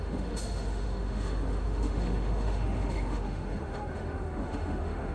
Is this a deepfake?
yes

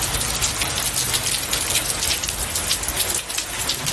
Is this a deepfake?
no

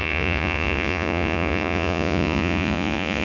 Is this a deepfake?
yes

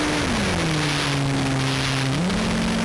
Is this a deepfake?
no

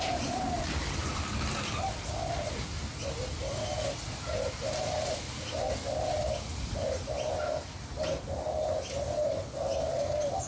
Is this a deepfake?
no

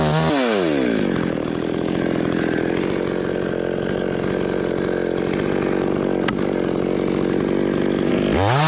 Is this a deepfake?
no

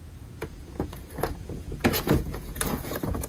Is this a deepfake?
yes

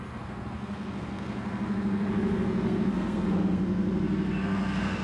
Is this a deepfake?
yes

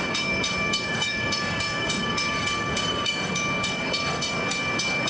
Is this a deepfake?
yes